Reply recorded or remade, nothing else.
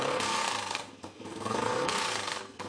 remade